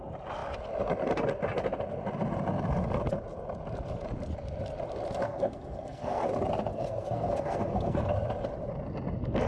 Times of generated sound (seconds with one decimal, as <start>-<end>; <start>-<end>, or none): 5.2-6.2; 6.7-8.1